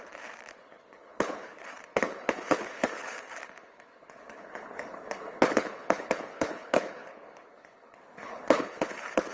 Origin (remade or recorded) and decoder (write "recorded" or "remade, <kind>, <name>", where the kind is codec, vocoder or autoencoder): remade, codec, HILCodec